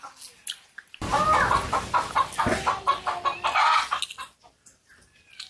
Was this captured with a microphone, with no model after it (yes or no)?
yes